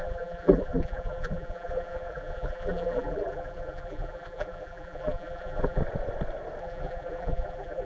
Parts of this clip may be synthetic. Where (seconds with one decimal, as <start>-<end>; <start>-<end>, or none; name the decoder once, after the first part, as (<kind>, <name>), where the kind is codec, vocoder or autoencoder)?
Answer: 0.0-5.8 (vocoder, BigVGAN v2); 6.6-7.8